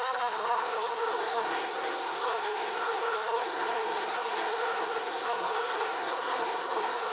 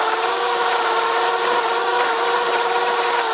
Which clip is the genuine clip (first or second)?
second